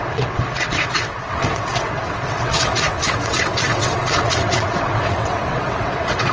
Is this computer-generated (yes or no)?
yes